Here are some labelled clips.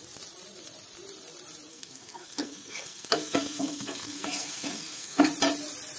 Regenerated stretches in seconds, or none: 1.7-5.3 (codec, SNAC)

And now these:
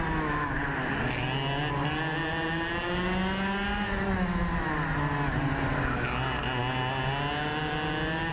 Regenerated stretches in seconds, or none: none